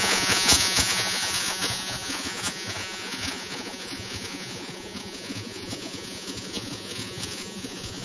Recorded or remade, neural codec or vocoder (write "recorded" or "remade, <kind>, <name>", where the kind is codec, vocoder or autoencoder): remade, vocoder, Vocos